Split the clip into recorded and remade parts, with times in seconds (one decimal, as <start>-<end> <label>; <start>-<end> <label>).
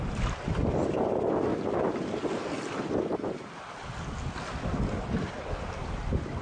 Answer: 0.0-6.4 recorded